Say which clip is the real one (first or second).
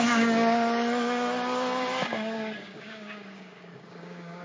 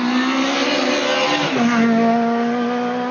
second